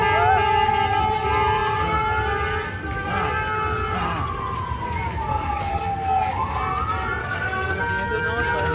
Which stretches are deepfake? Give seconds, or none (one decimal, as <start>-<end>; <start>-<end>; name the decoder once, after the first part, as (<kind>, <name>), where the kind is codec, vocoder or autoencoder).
5.3-6.6 (codec, SNAC); 7.2-7.8